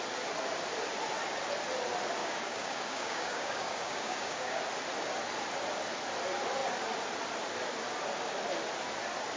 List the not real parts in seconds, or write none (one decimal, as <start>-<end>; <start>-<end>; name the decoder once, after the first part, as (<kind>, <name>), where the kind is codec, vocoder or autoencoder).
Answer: 2.2-4.6 (codec, DAC)